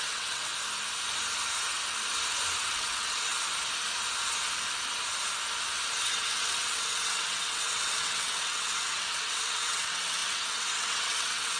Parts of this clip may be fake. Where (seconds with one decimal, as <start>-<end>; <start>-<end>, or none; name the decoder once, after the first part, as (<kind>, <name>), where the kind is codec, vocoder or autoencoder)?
0.0-0.5 (vocoder, WaveNeXt); 2.6-3.3; 6.0-11.6